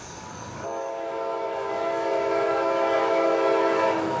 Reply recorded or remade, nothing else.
remade